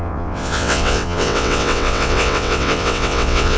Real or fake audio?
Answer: fake